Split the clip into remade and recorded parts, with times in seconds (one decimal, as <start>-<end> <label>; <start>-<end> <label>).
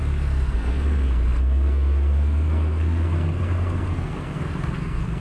0.0-5.2 remade